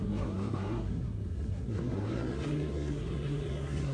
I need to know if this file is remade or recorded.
remade